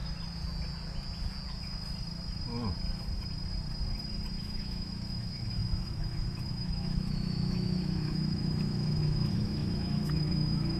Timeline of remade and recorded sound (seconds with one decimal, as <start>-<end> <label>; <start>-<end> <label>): 0.0-4.4 recorded; 4.4-10.8 remade